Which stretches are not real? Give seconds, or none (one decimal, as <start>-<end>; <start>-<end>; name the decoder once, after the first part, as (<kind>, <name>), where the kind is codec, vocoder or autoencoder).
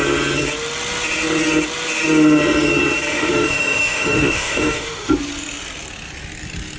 3.1-5.1 (autoencoder, DAC-VAE)